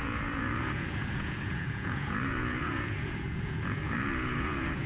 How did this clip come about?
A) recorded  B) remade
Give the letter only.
B